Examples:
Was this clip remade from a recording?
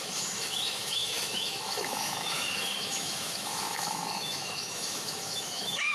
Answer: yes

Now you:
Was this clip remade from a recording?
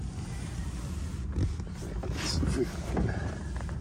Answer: no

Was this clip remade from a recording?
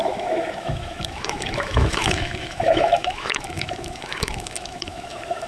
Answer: yes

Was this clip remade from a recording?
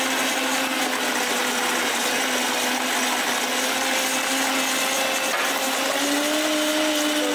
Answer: no